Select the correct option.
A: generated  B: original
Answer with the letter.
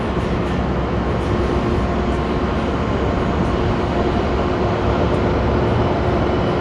B